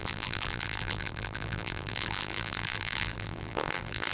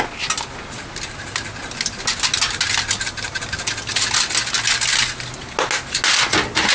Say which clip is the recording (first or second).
second